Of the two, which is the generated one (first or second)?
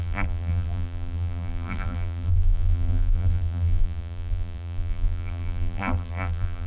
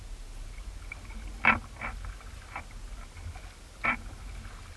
first